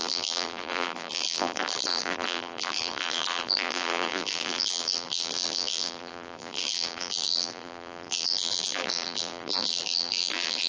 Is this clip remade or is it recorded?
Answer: remade